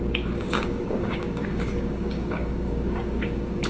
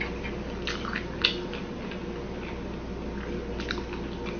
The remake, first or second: first